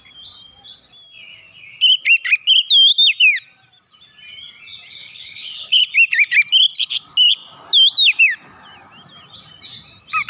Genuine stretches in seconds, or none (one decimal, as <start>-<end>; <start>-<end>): 0.0-5.0; 5.8-10.3